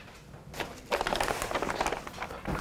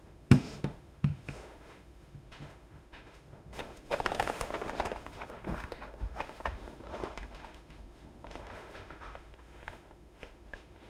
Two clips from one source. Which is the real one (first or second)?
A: first